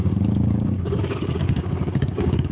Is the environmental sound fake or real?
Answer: fake